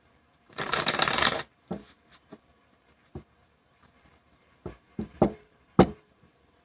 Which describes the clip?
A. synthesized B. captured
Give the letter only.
A